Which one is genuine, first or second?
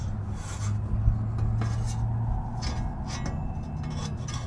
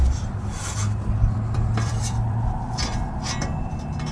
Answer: first